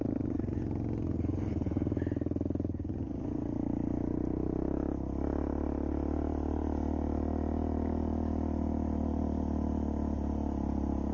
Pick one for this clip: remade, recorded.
recorded